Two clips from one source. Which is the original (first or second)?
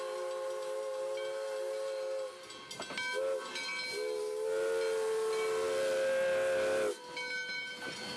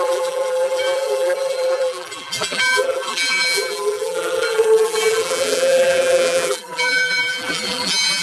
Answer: first